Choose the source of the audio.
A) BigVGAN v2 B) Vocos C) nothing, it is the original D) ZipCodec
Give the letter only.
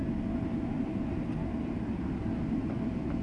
C